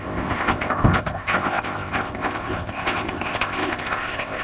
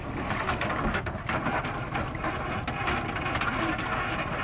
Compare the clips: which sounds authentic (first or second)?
second